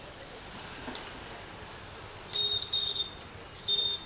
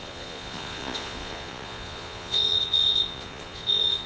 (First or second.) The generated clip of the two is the second